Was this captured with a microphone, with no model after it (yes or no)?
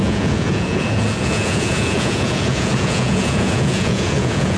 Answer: no